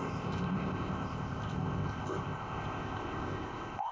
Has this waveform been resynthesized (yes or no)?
yes